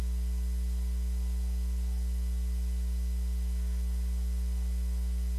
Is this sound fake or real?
real